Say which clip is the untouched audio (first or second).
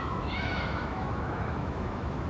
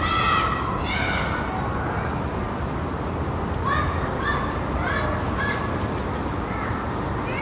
second